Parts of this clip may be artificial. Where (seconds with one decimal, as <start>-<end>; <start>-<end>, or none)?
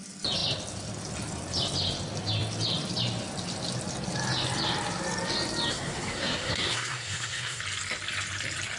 5.7-7.6